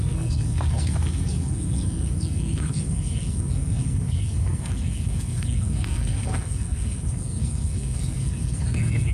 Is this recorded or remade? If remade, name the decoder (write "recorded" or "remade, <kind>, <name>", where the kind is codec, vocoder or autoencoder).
remade, codec, SNAC